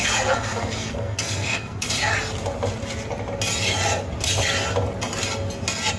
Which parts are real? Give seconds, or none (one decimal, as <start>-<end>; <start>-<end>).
2.1-6.0